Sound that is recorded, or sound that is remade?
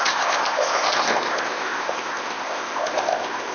remade